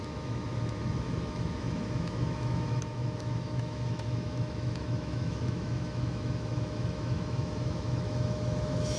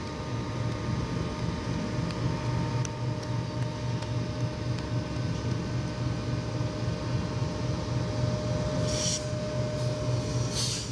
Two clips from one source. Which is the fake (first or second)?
first